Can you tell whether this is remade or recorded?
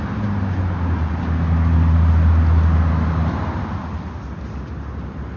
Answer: recorded